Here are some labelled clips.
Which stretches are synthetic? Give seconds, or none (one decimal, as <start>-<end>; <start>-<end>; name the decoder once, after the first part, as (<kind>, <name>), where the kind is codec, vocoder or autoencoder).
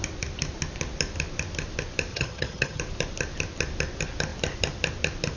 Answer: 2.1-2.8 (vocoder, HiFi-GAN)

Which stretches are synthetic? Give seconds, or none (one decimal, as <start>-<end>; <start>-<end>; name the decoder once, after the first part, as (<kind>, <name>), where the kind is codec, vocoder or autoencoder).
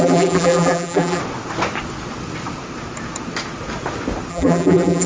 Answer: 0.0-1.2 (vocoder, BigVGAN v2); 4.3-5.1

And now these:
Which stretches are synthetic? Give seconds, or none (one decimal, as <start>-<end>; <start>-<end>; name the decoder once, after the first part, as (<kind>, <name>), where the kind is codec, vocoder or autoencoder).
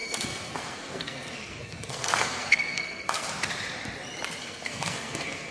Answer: 0.0-3.3 (codec, SNAC); 4.4-5.5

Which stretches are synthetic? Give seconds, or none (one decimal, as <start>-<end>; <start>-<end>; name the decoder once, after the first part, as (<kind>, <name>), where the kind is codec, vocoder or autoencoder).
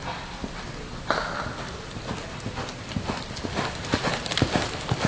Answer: none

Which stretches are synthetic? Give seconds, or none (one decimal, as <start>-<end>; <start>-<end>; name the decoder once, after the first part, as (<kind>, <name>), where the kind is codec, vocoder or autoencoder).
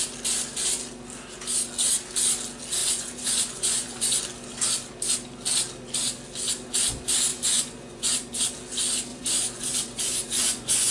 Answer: 2.8-4.2 (vocoder, Vocos); 7.3-8.4; 9.1-10.9